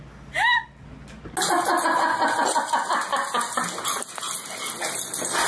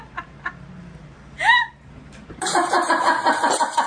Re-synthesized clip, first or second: second